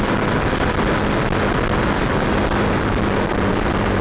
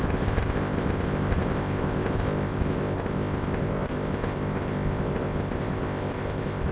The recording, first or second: first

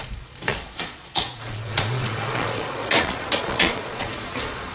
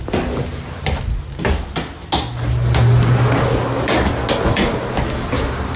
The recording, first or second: second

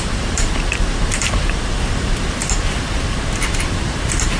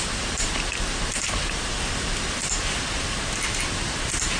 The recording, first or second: second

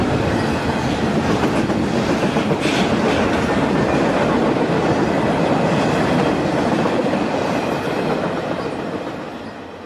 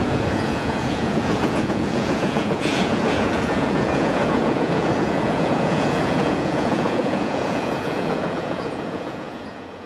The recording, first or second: first